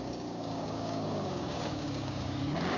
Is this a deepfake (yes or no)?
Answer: yes